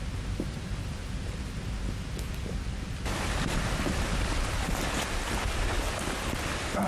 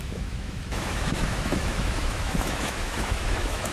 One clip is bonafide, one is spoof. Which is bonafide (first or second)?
first